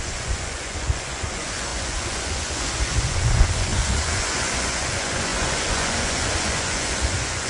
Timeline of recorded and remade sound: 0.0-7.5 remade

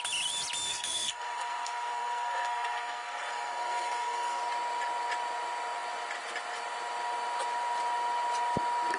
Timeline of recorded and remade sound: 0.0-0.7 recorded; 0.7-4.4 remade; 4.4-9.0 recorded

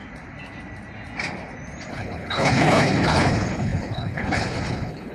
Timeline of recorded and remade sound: 0.0-1.9 recorded; 1.9-5.1 remade

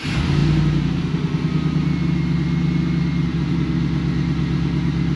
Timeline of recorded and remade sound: 0.0-5.2 recorded

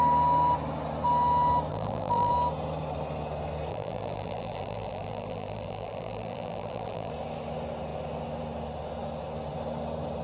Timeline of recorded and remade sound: 0.0-1.7 recorded; 1.7-2.3 remade; 2.3-3.7 recorded; 3.7-7.1 remade; 7.1-10.2 recorded